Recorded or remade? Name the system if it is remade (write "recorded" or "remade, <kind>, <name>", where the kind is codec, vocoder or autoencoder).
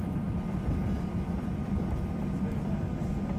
recorded